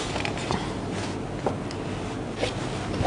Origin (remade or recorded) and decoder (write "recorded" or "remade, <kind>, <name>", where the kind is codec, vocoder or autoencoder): recorded